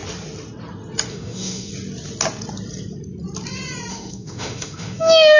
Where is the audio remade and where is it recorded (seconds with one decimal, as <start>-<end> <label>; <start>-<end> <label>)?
0.0-1.1 recorded; 1.1-1.7 remade; 1.7-3.9 recorded; 3.9-5.4 remade